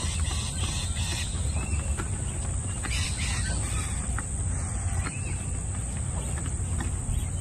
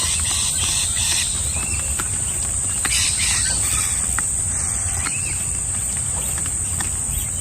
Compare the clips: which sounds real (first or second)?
first